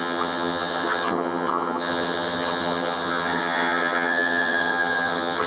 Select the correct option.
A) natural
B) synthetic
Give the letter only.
B